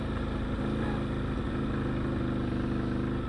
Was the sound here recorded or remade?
recorded